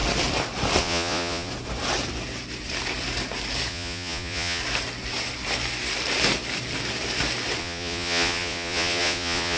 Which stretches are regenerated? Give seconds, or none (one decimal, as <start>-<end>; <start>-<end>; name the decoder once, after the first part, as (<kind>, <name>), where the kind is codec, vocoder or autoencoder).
0.8-1.5 (vocoder, Vocos); 3.7-4.6; 7.6-9.6